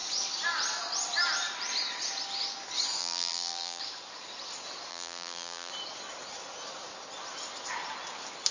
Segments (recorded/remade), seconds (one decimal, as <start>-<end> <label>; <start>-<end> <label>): 0.0-3.0 recorded; 3.0-3.8 remade; 3.8-4.9 recorded; 4.9-5.7 remade; 5.7-8.5 recorded